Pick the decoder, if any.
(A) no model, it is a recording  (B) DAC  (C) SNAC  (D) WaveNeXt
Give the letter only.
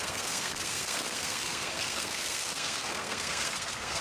C